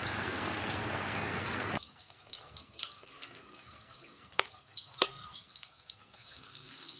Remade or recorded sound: remade